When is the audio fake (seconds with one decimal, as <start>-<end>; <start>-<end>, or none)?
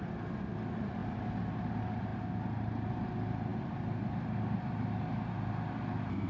none